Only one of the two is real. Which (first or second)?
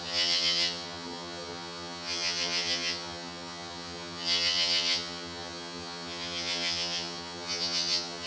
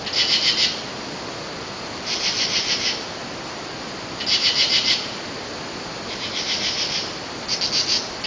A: second